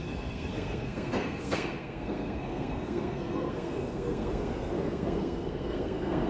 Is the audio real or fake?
fake